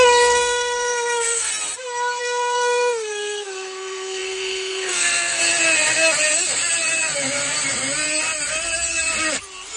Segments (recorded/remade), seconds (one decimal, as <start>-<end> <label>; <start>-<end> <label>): 0.0-1.5 remade; 1.5-2.2 recorded; 2.2-5.4 remade; 5.4-9.8 recorded